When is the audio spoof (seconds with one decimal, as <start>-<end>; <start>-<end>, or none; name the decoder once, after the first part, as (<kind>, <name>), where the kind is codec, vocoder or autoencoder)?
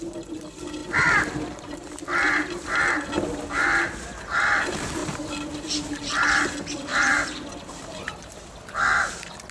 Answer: 5.0-5.7 (vocoder, BigVGAN v2); 6.9-8.8